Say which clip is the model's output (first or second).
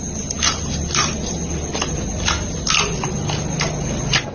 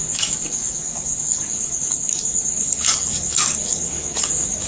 second